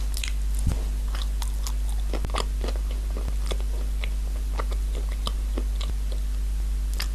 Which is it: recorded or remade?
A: remade